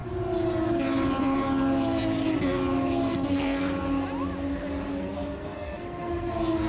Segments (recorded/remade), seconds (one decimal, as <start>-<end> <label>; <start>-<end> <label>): 0.0-3.1 recorded; 3.1-3.7 remade; 3.7-4.9 recorded; 4.9-6.3 remade; 6.3-6.7 recorded